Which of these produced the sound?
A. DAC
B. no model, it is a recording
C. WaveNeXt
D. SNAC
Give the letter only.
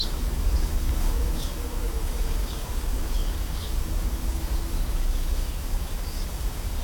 A